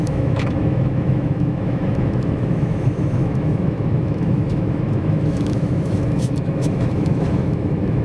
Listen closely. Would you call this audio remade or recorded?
remade